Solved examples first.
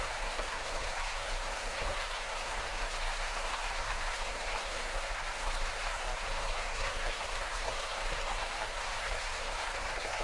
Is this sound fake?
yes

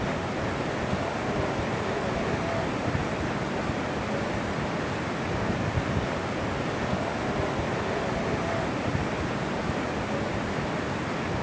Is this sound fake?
no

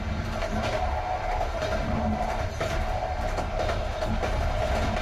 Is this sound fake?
no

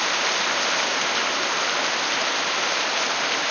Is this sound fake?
no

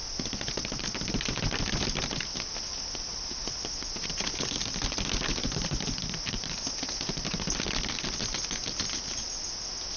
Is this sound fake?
no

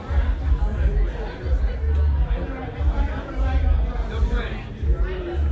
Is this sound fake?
no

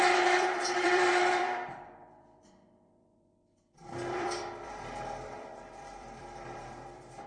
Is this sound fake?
yes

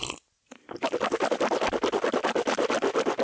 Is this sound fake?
no